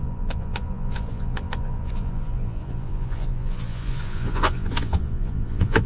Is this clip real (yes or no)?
no